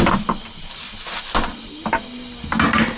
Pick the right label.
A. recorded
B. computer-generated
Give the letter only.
A